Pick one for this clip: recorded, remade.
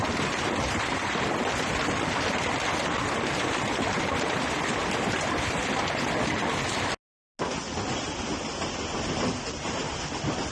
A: recorded